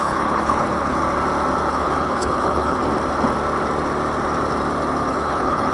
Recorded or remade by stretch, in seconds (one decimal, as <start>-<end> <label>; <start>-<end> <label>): 0.0-1.0 remade; 1.0-1.7 recorded; 1.7-2.8 remade; 2.8-5.1 recorded; 5.1-5.7 remade